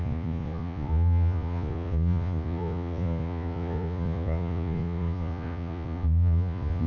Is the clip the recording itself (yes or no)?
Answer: no